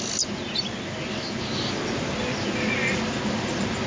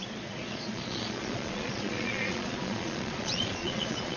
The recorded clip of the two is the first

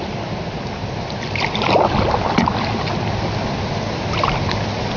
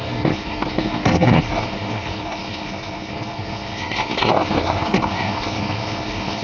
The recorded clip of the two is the first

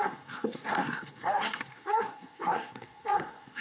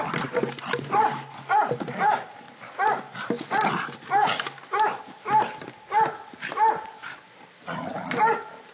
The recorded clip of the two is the second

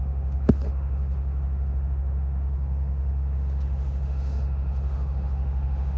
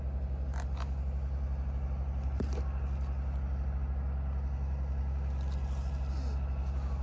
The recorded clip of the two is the second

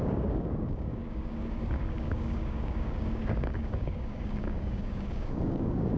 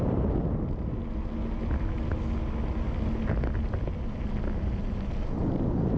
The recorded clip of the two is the second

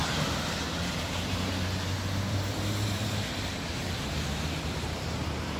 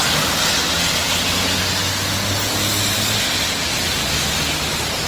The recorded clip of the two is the second